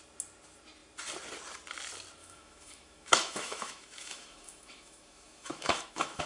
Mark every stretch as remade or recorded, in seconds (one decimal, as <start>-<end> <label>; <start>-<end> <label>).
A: 0.0-2.2 recorded; 2.2-6.3 remade